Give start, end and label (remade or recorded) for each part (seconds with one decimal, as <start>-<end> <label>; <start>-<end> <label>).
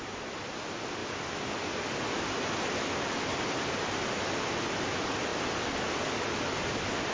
0.0-7.1 recorded